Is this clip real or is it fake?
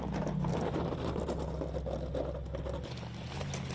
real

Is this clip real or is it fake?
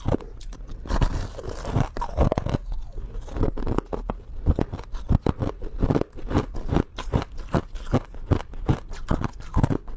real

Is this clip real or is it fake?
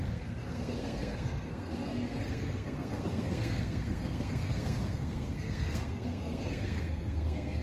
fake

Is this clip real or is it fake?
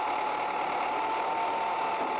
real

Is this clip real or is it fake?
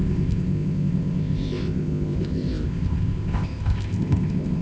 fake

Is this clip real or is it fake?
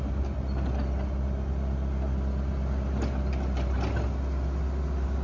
real